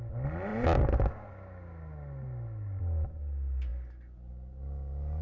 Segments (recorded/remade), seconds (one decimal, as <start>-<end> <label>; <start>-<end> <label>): 0.0-5.2 recorded